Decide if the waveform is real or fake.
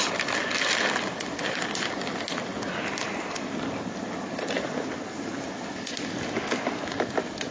real